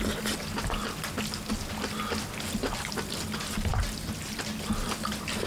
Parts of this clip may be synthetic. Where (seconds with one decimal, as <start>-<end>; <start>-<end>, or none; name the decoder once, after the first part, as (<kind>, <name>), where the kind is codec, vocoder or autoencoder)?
none